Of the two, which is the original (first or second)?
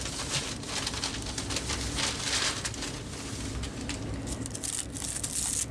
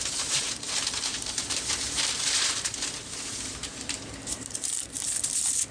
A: first